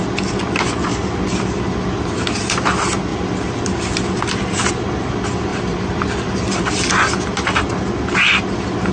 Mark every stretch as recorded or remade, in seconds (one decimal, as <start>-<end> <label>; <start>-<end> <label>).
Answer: 0.0-1.0 recorded; 1.0-1.7 remade; 1.7-3.1 recorded; 3.1-4.7 remade; 4.7-5.5 recorded; 5.5-6.9 remade; 6.9-8.9 recorded